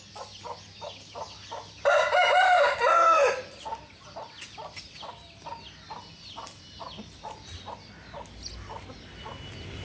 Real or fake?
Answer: real